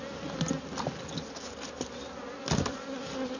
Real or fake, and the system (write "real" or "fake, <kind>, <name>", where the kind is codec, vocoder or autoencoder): real